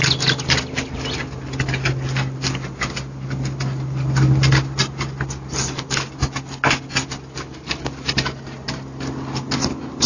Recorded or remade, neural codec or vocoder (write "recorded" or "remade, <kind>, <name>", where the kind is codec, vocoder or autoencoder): recorded